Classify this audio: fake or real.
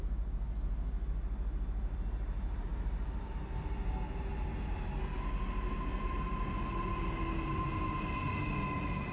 real